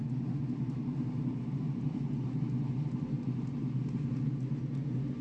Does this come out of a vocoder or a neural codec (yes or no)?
no